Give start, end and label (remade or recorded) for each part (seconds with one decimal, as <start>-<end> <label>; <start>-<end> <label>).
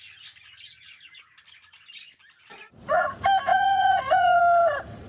0.0-2.5 recorded; 2.5-3.1 remade; 3.1-3.5 recorded; 3.5-4.4 remade; 4.4-5.1 recorded